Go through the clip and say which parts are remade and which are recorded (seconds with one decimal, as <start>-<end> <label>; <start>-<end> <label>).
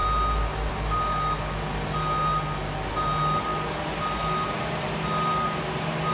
0.0-6.1 recorded